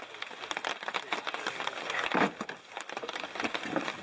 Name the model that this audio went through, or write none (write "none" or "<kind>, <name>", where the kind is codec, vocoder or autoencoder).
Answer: vocoder, BigVGAN v2